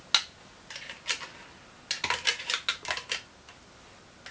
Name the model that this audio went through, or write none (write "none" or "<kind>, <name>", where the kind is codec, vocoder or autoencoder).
none